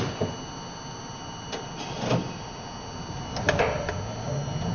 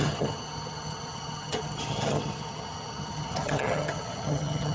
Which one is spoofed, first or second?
second